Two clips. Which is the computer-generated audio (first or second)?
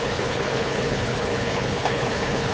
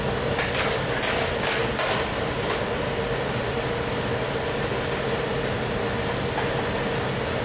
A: first